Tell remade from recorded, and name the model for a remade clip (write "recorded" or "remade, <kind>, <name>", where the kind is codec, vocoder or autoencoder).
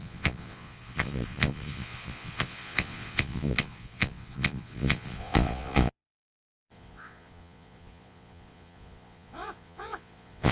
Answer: remade, vocoder, Vocos